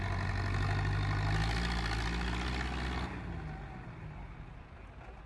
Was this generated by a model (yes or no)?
no